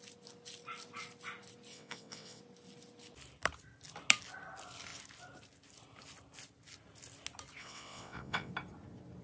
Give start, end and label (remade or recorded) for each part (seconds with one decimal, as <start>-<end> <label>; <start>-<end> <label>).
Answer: 0.0-1.7 recorded; 1.7-2.4 remade; 2.4-7.6 recorded; 7.6-8.5 remade; 8.5-9.2 recorded

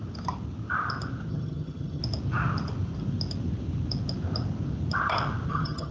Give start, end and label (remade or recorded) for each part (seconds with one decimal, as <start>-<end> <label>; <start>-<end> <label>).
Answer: 0.0-1.3 recorded; 1.3-2.0 remade; 2.0-5.5 recorded; 5.5-5.9 remade